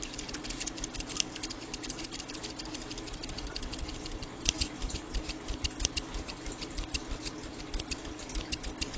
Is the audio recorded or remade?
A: recorded